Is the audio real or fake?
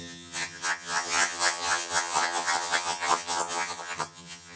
fake